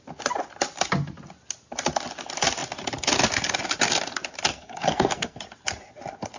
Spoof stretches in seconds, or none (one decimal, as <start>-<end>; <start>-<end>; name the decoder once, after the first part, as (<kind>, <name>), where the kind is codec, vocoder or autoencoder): 4.5-5.4 (codec, SNAC)